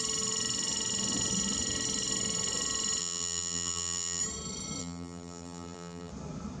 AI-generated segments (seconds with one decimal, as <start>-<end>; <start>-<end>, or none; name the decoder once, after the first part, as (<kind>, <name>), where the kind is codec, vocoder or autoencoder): 3.0-4.2 (vocoder, BigVGAN v2); 4.8-6.1

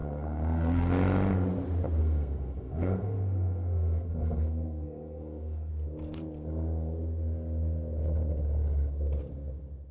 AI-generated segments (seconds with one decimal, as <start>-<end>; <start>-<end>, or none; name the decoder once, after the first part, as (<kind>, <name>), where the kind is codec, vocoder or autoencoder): 0.0-0.9 (codec, SNAC); 2.0-5.7